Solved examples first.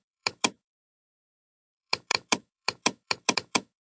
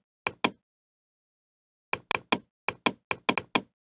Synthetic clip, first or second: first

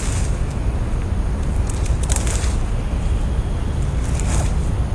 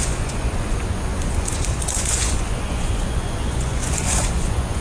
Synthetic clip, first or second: second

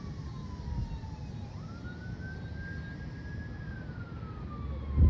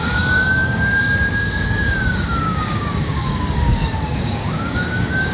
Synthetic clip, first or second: second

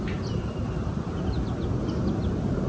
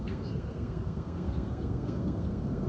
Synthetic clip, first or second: second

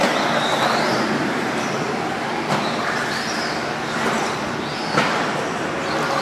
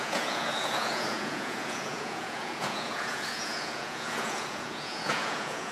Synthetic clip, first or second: second